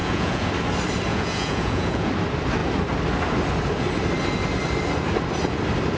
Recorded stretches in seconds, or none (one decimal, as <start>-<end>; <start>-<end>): 0.5-1.1; 2.1-6.0